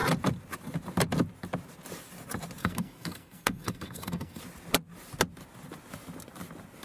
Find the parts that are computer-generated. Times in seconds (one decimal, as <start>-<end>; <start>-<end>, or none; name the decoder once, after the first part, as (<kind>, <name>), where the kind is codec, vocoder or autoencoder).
2.6-4.4 (codec, SNAC)